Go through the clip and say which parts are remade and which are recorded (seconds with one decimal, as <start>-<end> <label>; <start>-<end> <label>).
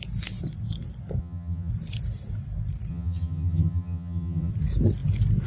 0.0-1.2 recorded; 1.2-1.7 remade; 1.7-2.9 recorded; 2.9-4.5 remade; 4.5-5.5 recorded